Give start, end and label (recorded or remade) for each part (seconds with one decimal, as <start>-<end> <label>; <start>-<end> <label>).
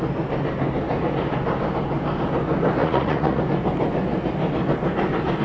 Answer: 0.0-2.8 recorded; 2.8-3.4 remade; 3.4-5.4 recorded